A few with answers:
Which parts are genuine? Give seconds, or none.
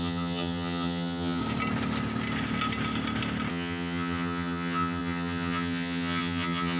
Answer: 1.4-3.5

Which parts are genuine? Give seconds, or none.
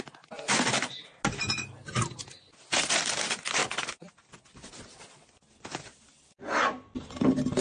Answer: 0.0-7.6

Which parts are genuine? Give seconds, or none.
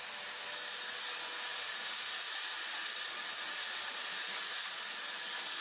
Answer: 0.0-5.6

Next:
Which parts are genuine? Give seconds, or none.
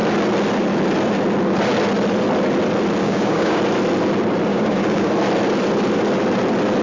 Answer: 0.0-3.0; 3.6-4.5; 5.1-6.8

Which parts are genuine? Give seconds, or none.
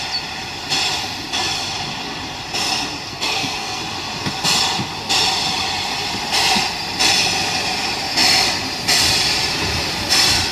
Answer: 0.0-3.1; 3.8-10.5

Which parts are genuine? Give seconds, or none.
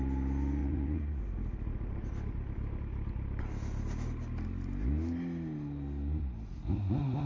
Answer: 0.0-0.6; 1.2-7.3